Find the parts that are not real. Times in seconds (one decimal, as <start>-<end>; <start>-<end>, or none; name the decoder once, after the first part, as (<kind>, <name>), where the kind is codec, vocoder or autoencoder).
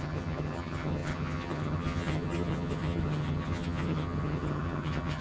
0.0-5.2 (vocoder, HiFi-GAN)